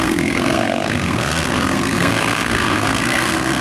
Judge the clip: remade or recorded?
remade